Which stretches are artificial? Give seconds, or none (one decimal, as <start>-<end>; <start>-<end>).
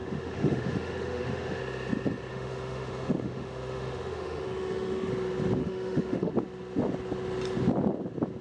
0.0-1.6; 2.3-5.1; 5.6-6.3